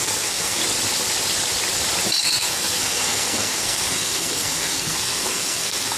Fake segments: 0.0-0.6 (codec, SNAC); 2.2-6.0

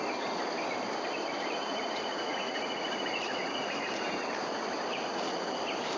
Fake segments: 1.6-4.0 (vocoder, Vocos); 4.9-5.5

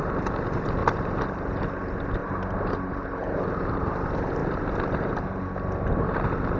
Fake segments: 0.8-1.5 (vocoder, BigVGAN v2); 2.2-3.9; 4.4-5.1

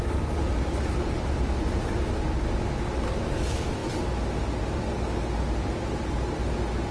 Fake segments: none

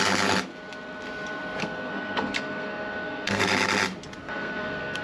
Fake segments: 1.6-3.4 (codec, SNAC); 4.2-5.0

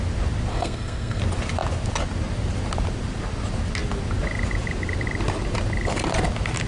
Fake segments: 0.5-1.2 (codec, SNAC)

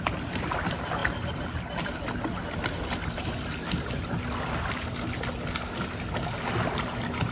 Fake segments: none

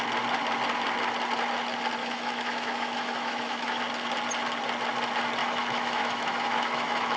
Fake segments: 2.0-3.8 (autoencoder, DAC-VAE); 5.4-7.2